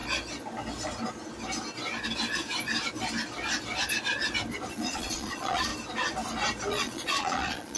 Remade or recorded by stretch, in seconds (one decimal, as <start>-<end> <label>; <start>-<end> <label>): 0.0-4.7 recorded; 4.7-5.7 remade; 5.7-6.7 recorded; 6.7-7.8 remade